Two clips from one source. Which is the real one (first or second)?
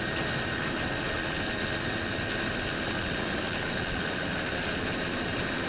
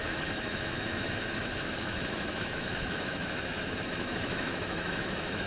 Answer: first